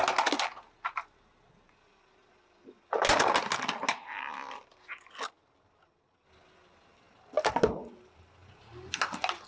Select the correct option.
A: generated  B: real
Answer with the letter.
B